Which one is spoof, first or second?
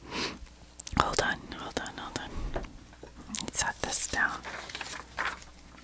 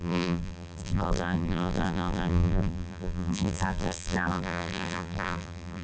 second